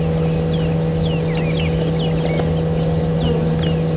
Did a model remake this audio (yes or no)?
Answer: no